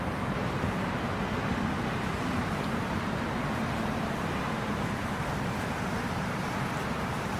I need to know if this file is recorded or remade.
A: remade